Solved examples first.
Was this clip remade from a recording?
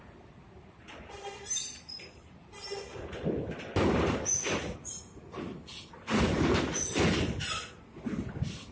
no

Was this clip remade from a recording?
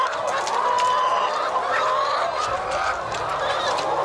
no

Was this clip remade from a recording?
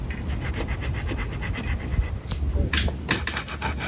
no